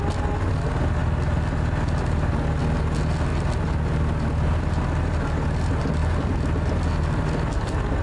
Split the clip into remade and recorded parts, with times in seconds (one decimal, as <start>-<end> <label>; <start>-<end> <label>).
0.0-8.0 recorded